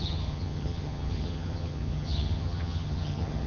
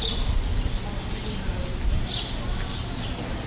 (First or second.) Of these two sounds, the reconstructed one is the first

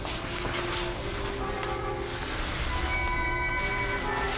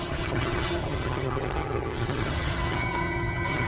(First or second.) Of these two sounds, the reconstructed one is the second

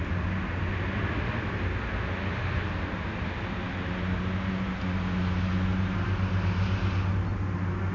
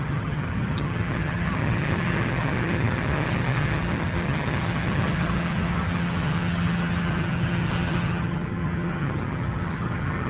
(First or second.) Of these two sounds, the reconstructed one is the second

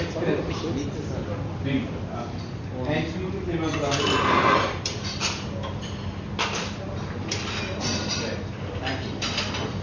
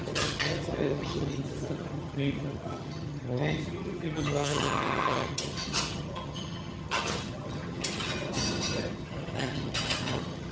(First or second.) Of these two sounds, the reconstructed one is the second